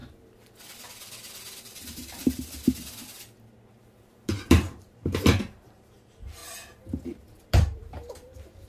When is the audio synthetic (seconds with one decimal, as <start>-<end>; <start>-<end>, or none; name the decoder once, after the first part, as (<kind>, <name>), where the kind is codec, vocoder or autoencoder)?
1.6-2.2 (vocoder, BigVGAN v2); 4.1-6.4; 7.0-8.7